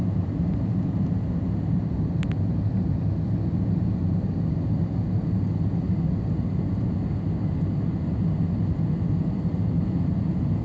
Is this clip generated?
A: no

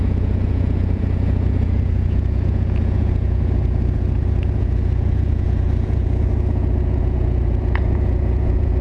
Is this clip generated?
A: yes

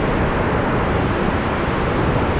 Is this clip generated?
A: no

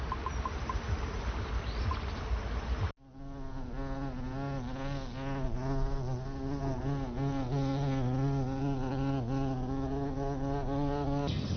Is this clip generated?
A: no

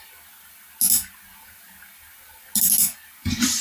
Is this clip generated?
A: no